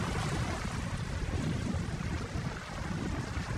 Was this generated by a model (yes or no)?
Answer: no